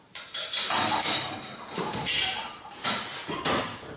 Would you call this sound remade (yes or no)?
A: yes